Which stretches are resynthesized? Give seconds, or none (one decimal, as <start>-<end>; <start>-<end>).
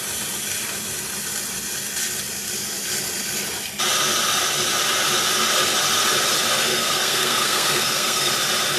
6.7-8.3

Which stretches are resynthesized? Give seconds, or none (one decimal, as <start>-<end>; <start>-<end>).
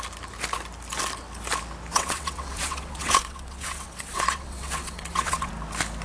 1.9-5.5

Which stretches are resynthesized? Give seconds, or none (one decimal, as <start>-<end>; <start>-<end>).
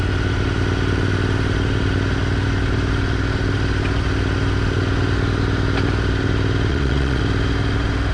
6.7-7.2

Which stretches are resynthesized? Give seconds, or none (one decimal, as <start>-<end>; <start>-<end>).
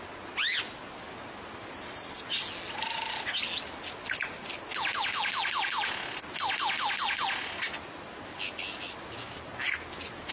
none